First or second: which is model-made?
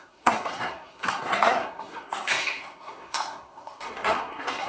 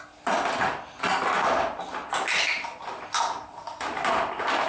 first